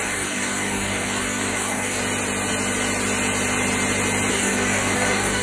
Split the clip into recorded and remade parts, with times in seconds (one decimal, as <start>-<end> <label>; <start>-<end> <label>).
0.0-2.0 remade; 2.0-4.3 recorded; 4.3-5.4 remade